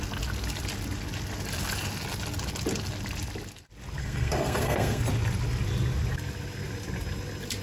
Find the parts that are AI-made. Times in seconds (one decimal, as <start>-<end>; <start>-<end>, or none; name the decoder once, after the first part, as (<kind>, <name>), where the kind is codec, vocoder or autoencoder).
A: 4.0-5.0 (codec, SNAC)